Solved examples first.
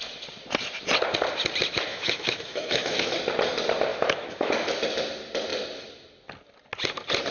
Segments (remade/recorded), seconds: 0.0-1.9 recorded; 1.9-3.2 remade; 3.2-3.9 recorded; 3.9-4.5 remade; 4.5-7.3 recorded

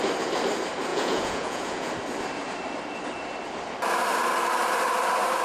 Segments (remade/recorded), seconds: 0.0-0.9 recorded; 0.9-1.9 remade; 1.9-5.4 recorded

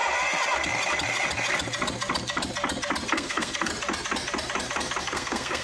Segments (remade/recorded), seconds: 0.0-3.1 recorded; 3.1-3.7 remade; 3.7-5.0 recorded; 5.0-5.6 remade

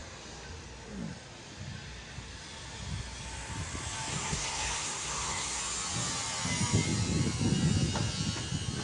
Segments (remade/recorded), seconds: 0.0-4.1 recorded; 4.1-5.6 remade; 5.6-8.8 recorded

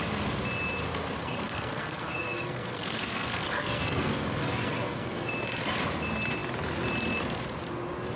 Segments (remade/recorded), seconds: 0.0-1.2 recorded; 1.2-5.3 remade; 5.3-8.2 recorded